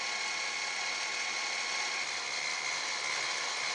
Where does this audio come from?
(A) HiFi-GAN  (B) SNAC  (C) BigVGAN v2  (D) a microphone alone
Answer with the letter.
D